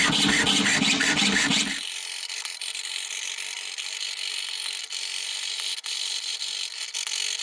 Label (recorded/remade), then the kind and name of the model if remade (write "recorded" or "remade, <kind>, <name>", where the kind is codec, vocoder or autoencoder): recorded